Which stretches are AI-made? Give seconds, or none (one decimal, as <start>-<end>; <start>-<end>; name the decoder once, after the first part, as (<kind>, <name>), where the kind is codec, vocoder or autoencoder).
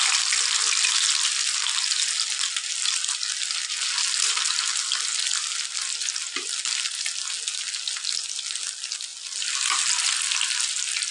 none